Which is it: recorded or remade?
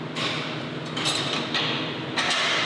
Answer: recorded